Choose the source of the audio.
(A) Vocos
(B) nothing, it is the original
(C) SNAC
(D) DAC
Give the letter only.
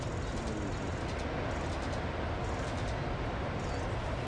B